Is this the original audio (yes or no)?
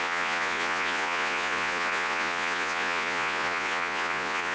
no